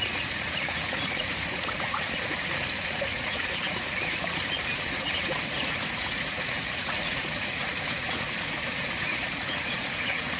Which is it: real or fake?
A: fake